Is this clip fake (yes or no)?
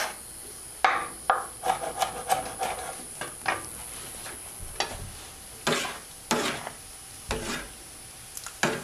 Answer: no